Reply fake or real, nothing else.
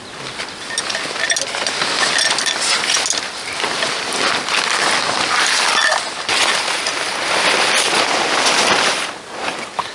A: real